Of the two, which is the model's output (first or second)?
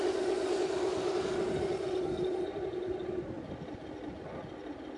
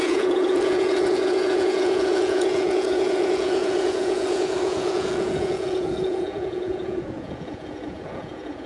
second